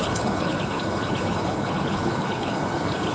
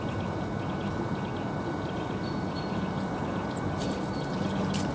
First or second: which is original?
second